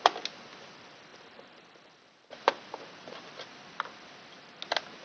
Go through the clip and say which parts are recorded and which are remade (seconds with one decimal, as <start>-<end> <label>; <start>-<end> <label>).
0.0-5.0 recorded